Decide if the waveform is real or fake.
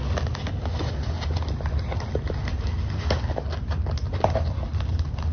real